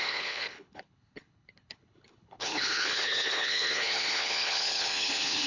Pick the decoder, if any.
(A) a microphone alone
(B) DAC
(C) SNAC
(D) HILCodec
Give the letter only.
D